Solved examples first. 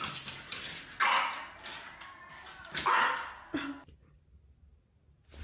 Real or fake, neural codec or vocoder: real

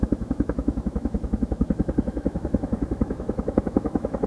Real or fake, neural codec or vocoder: fake, autoencoder, DAC-VAE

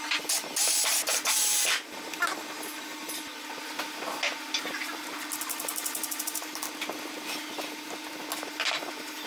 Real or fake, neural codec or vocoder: real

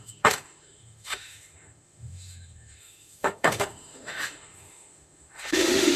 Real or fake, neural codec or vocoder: fake, autoencoder, DAC-VAE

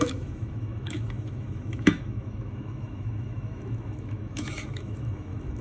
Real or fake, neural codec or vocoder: fake, autoencoder, DAC-VAE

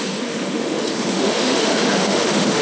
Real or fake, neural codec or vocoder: fake, autoencoder, DAC-VAE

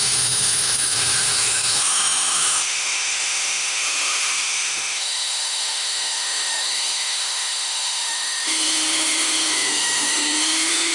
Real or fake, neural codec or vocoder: fake, autoencoder, DAC-VAE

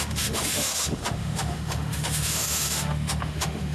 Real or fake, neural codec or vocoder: fake, autoencoder, DAC-VAE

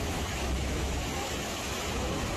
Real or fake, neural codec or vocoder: fake, autoencoder, DAC-VAE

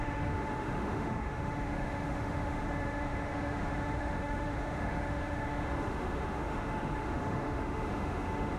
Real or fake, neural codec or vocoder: fake, autoencoder, DAC-VAE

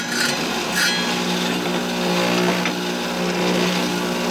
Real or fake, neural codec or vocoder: real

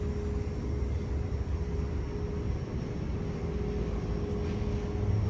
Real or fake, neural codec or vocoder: real